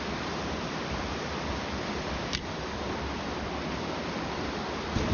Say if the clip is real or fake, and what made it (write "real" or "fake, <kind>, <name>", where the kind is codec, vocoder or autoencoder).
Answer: real